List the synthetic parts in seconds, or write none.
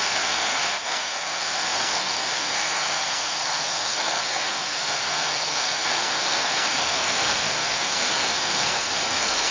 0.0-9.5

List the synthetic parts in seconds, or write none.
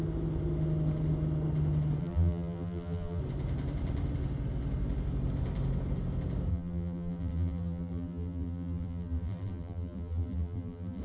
2.0-3.2; 6.5-11.0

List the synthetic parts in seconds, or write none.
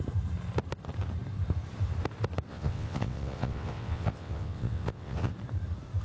2.5-5.3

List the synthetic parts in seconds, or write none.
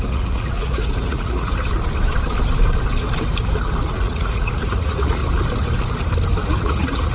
0.0-1.5; 3.9-5.2; 6.5-7.1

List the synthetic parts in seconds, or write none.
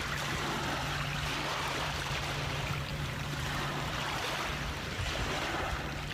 1.5-2.1; 2.9-3.5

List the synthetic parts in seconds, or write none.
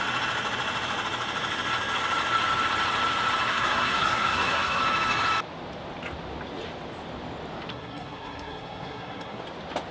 3.5-4.8; 7.7-9.4